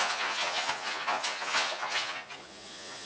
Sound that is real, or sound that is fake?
fake